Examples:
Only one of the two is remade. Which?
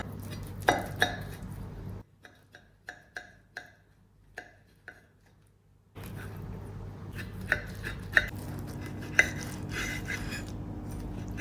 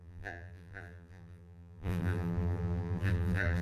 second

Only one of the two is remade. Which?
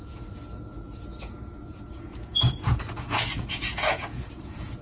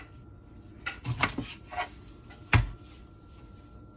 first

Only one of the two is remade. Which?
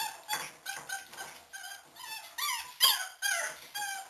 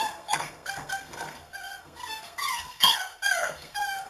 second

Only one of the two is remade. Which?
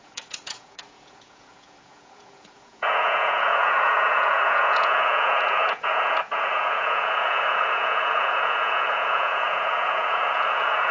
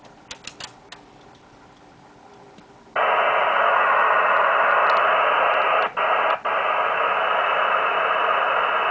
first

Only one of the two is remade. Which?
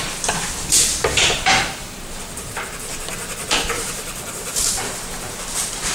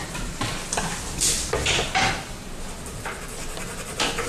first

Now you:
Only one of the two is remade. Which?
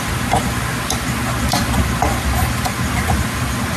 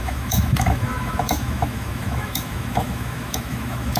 second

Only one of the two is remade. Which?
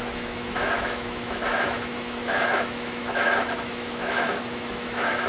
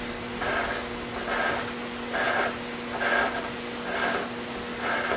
first